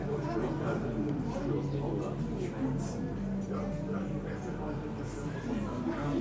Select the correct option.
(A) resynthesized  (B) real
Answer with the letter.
B